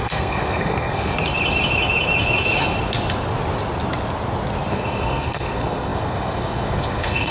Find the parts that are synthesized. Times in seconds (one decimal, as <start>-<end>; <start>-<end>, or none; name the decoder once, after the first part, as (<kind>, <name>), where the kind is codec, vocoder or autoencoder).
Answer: 0.0-1.1 (codec, SNAC); 4.7-7.3